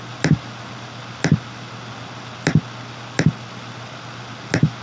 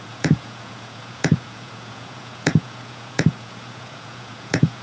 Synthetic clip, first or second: second